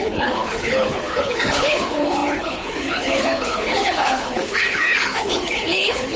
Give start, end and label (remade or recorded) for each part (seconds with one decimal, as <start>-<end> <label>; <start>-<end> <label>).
0.0-6.2 remade